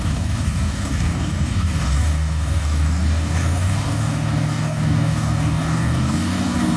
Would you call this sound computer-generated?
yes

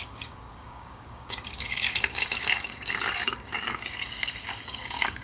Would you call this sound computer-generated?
yes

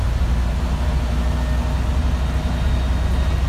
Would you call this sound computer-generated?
no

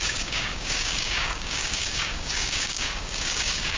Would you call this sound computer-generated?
yes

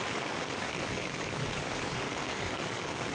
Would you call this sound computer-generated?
yes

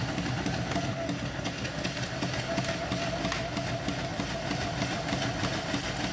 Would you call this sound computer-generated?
no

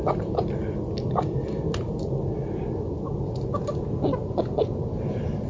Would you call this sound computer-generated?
no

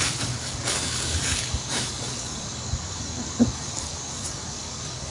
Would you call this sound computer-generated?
yes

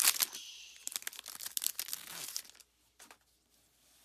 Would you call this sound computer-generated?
no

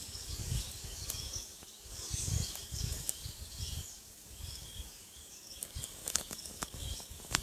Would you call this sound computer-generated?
yes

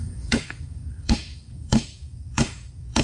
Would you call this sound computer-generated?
yes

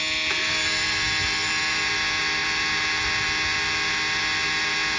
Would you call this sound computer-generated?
no